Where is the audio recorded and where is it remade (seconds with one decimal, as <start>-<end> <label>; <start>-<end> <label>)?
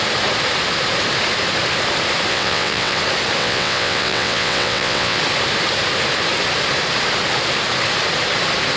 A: 0.0-2.3 recorded; 2.3-3.0 remade; 3.0-3.4 recorded; 3.4-5.2 remade; 5.2-8.8 recorded